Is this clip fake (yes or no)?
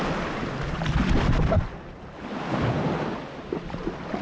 no